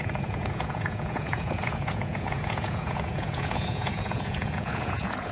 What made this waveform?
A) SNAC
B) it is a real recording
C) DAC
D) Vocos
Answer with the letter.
D